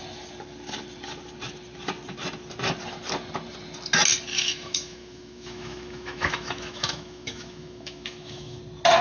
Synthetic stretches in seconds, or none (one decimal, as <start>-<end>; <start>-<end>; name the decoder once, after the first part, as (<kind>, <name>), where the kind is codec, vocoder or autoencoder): 4.3-8.6 (autoencoder, DAC-VAE)